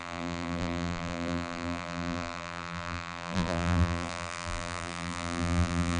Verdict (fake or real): fake